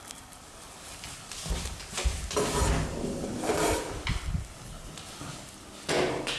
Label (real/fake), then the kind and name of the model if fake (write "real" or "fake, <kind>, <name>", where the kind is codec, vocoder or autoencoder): real